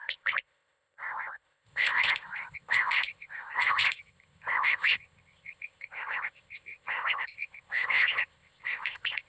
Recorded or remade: remade